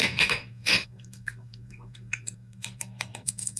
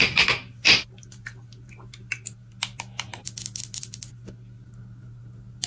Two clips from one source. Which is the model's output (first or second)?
first